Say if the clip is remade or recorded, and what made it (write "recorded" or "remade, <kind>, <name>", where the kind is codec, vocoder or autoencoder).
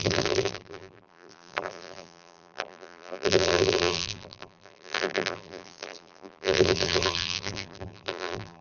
remade, vocoder, BigVGAN v2